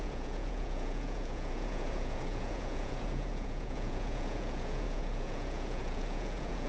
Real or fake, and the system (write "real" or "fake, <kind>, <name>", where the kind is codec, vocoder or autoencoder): fake, vocoder, Vocos